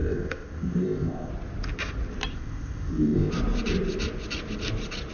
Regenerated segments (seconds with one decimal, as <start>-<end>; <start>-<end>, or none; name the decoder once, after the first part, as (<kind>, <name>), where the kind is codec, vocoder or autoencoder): 0.0-1.3 (codec, ZipCodec); 2.3-3.3